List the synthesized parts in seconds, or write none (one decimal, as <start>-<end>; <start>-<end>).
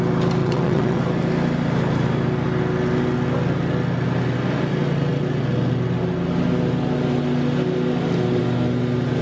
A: 0.4-1.0